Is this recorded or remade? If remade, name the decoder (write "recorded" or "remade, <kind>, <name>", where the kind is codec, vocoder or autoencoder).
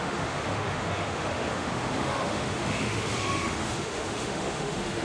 remade, autoencoder, DAC-VAE